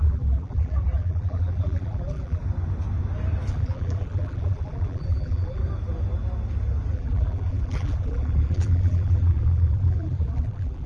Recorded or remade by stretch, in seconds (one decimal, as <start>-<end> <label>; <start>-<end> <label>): 0.0-2.4 remade; 2.4-3.5 recorded; 3.5-5.6 remade; 5.6-6.9 recorded; 6.9-10.9 remade